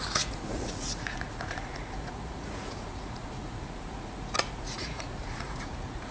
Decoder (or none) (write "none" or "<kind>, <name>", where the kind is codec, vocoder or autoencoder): vocoder, Vocos